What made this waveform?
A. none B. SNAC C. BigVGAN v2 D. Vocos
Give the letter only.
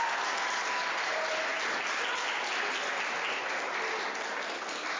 A